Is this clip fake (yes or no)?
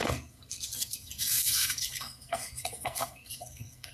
yes